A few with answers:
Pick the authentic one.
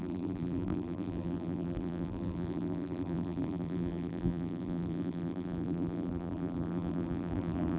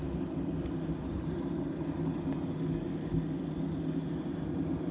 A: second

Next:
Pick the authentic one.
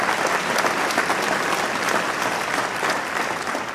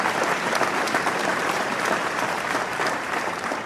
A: first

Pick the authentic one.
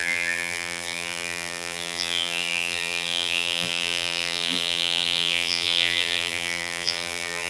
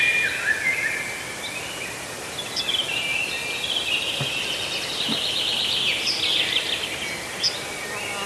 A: second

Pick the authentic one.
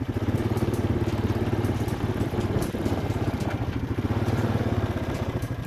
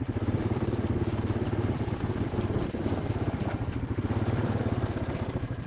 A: first